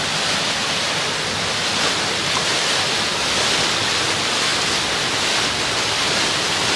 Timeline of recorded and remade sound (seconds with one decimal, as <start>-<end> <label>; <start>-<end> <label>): 0.0-6.8 recorded